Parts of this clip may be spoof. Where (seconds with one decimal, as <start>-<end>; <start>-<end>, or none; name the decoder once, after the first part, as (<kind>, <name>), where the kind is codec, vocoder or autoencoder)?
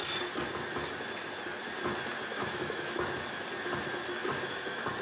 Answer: 2.3-3.0 (autoencoder, DAC-VAE); 4.2-5.0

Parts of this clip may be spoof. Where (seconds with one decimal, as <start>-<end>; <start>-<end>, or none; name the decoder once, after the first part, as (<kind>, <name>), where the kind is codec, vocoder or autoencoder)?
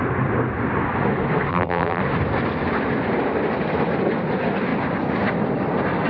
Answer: 1.5-2.0 (vocoder, BigVGAN v2)